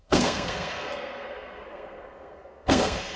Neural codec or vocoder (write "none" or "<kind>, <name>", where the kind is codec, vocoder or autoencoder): codec, SNAC